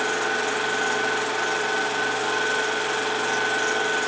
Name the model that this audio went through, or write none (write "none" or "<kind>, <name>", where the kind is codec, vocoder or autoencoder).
none